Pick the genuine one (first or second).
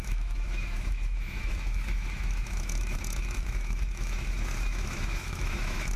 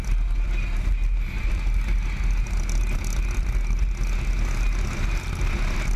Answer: second